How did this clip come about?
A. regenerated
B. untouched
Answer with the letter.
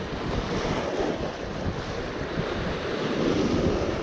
B